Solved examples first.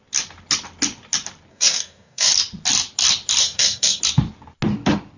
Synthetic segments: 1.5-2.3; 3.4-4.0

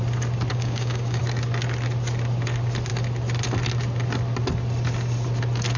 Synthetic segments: 0.5-1.2

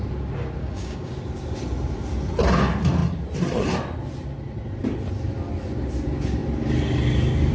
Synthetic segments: 0.6-1.1

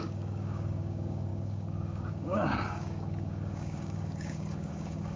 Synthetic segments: 0.0-5.2